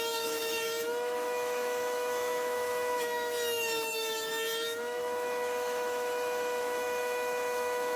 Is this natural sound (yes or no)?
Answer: no